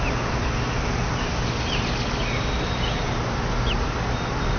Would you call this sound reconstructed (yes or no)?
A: no